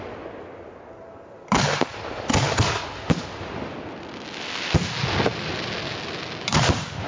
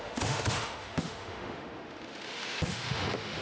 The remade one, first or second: second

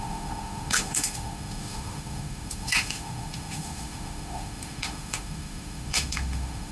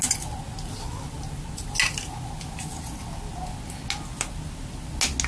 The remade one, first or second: first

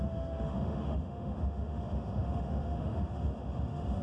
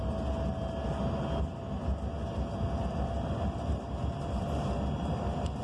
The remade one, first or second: first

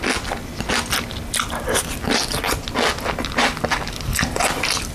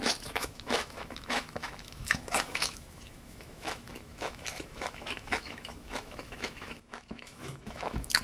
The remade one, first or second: second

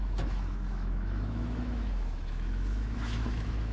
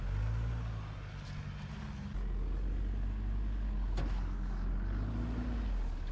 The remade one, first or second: first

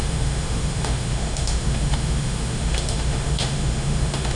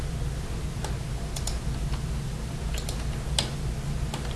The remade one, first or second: first